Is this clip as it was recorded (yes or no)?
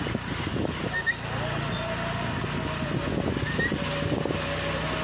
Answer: yes